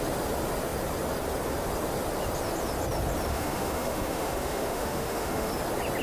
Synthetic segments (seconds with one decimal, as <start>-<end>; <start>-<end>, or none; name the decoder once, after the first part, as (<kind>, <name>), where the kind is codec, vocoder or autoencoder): 3.3-5.5 (autoencoder, DAC-VAE)